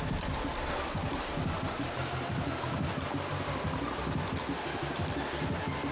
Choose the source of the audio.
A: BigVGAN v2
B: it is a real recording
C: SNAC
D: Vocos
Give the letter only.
B